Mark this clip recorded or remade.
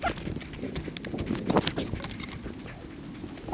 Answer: recorded